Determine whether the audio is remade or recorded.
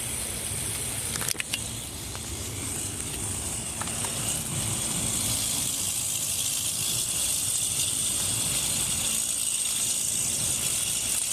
recorded